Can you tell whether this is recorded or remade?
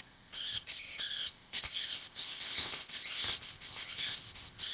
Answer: remade